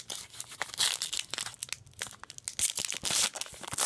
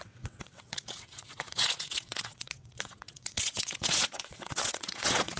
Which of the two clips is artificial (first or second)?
second